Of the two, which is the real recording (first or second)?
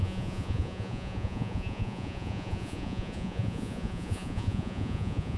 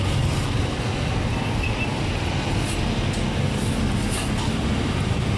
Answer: second